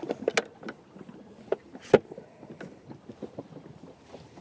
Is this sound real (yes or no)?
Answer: yes